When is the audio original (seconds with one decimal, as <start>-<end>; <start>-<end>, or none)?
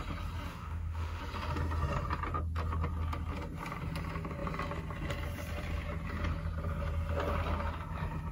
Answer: 0.0-0.5; 1.2-8.3